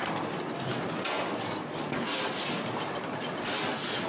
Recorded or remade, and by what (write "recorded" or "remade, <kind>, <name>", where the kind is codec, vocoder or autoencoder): recorded